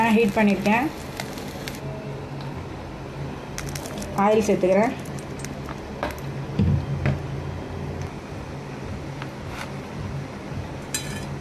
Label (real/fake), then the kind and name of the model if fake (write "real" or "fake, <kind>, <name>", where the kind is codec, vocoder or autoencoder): real